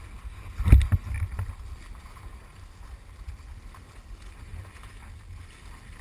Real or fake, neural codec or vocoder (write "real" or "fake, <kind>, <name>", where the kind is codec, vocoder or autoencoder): real